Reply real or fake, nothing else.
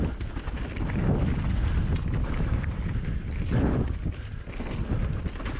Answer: real